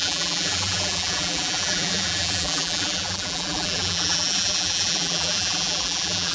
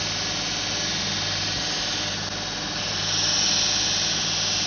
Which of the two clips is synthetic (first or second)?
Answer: first